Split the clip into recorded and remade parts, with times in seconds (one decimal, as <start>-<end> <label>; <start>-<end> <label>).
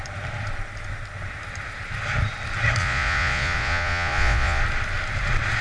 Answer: 0.0-2.8 recorded; 2.8-4.6 remade; 4.6-5.6 recorded